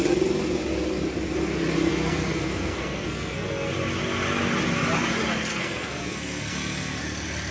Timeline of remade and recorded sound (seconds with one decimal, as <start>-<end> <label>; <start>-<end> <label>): 0.0-1.9 recorded; 1.9-3.7 remade; 3.7-5.5 recorded; 5.5-7.0 remade; 7.0-7.5 recorded